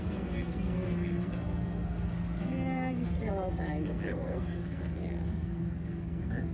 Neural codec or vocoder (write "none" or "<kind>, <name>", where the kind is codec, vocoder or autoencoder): codec, SNAC